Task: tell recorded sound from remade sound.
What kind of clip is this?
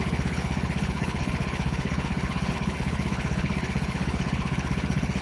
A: remade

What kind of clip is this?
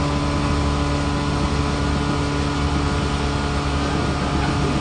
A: recorded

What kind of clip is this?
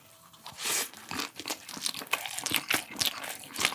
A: remade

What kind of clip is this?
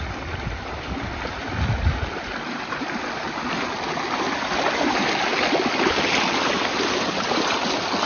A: recorded